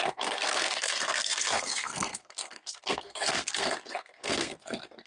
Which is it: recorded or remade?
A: remade